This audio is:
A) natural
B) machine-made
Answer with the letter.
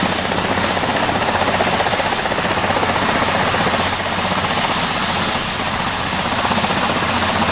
A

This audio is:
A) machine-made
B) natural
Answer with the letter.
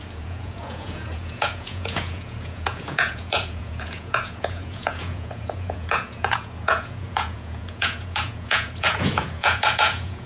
A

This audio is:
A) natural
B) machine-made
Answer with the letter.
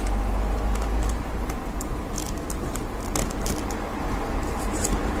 A